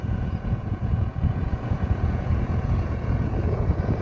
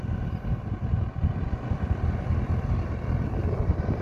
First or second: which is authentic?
second